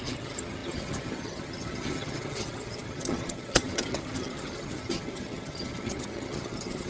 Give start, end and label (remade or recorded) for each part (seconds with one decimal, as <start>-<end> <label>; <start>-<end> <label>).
0.0-6.9 remade